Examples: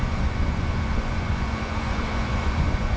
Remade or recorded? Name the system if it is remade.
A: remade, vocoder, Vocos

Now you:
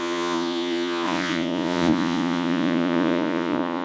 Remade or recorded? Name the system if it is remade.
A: remade, vocoder, Vocos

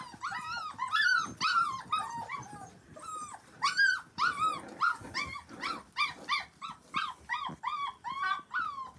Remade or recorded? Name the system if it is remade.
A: recorded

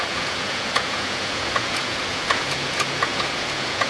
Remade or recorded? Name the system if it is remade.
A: remade, vocoder, Vocos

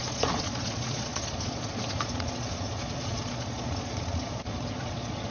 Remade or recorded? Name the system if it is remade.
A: remade, vocoder, Vocos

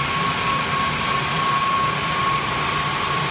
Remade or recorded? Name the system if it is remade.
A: recorded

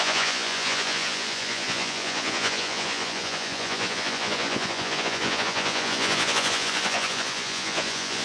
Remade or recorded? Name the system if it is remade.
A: remade, vocoder, Vocos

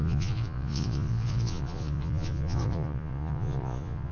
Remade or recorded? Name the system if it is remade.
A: remade, vocoder, Vocos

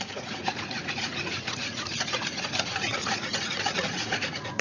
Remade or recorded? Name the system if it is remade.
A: remade, vocoder, Vocos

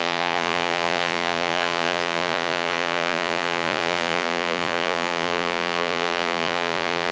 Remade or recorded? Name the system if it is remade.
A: remade, vocoder, Vocos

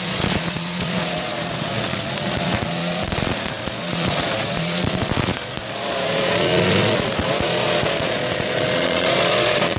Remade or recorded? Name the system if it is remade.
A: remade, vocoder, Vocos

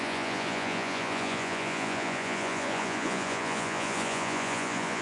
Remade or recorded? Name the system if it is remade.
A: remade, vocoder, Vocos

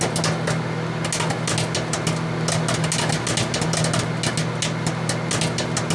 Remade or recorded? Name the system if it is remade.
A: recorded